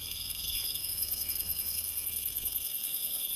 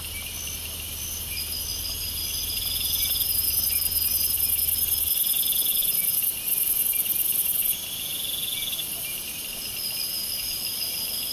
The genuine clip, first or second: second